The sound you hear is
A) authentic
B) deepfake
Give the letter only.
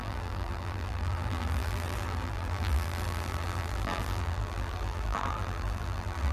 B